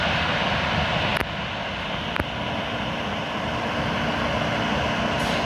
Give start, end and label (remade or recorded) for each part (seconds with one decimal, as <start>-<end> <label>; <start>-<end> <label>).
0.0-5.5 recorded